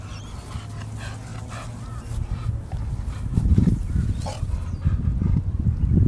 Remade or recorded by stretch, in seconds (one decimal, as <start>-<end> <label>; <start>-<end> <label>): 0.0-6.1 recorded